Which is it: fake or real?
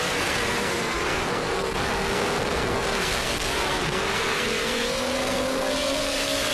fake